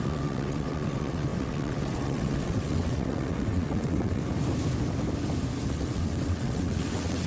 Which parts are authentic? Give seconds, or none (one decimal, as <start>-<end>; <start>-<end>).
4.2-5.7